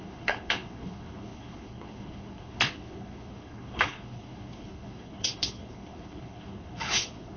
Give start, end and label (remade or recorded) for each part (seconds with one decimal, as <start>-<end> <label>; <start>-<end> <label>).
0.0-7.4 remade